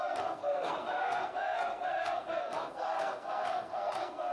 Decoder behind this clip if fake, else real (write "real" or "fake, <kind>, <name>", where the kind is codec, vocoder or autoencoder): fake, codec, SNAC